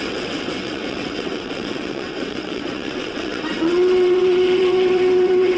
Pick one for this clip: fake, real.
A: fake